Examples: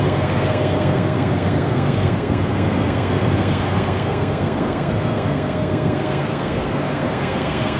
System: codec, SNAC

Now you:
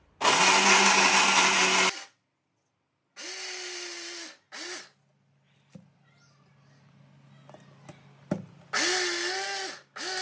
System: none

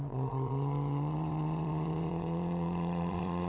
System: vocoder, Vocos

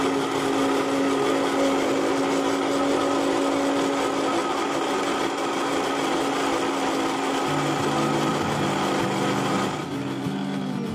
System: none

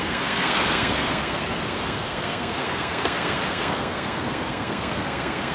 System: codec, SNAC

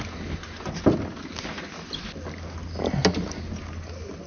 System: none